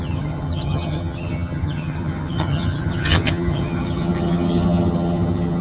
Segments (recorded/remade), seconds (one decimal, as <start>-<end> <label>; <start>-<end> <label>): 0.0-5.6 remade